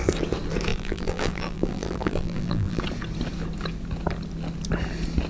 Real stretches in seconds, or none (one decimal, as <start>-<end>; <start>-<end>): 0.0-0.7; 2.8-5.3